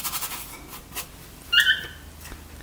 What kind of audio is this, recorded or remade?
recorded